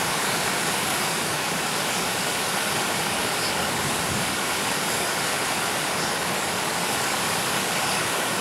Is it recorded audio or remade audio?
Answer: remade